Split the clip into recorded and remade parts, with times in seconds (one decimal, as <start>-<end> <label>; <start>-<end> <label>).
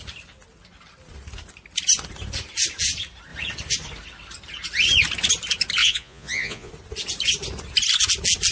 0.0-5.8 recorded; 5.8-6.7 remade; 6.7-8.5 recorded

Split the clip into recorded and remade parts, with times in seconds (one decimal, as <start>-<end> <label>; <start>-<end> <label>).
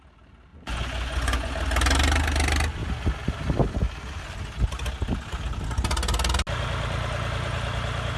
0.0-0.5 recorded; 0.5-1.5 remade; 1.5-8.2 recorded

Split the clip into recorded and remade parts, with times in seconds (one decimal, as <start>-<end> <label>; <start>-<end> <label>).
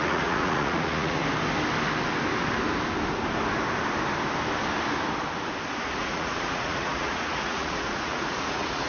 0.0-1.2 remade; 1.2-6.0 recorded; 6.0-8.9 remade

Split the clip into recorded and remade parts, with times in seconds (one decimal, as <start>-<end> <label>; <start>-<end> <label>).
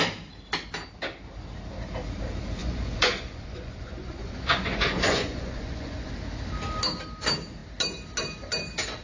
0.0-2.6 recorded; 2.6-6.1 remade; 6.1-9.0 recorded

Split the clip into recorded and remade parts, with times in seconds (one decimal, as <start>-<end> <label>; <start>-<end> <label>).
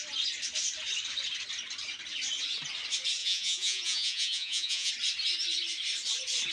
0.0-3.2 recorded; 3.2-4.9 remade; 4.9-6.5 recorded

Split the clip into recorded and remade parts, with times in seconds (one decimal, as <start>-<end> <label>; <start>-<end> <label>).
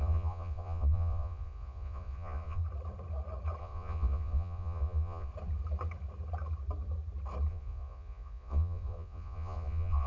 0.0-2.6 remade; 2.6-3.6 recorded; 3.6-5.3 remade; 5.3-7.5 recorded; 7.5-10.1 remade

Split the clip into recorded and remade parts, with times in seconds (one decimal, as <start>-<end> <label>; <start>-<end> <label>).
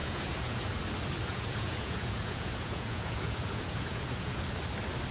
0.0-0.7 remade; 0.7-1.3 recorded; 1.3-4.4 remade; 4.4-5.1 recorded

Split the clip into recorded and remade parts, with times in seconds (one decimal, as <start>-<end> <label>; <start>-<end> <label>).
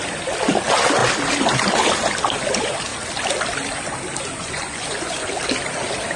0.0-4.4 recorded; 4.4-5.3 remade; 5.3-6.2 recorded